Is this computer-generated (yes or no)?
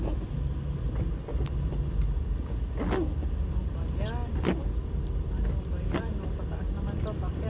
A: no